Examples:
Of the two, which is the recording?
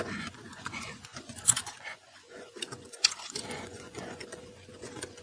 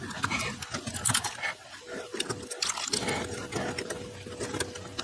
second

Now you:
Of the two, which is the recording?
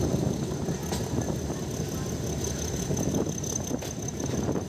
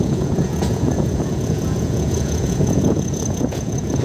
first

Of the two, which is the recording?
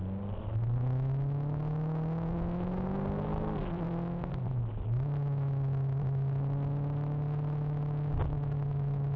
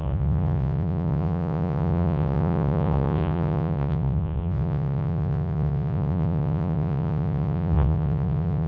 first